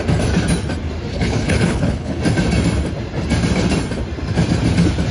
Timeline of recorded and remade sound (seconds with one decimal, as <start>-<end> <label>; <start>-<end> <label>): 0.0-1.1 recorded; 1.1-2.2 remade; 2.2-5.1 recorded